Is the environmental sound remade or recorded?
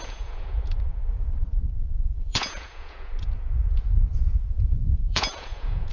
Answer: remade